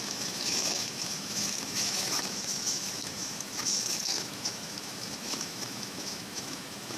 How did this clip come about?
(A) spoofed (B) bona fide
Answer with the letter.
A